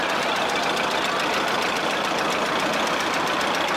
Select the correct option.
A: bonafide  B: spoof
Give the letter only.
A